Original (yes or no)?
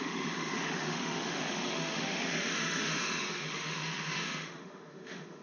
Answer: no